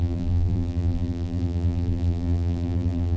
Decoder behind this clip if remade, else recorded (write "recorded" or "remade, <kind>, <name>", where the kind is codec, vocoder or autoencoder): remade, vocoder, BigVGAN v2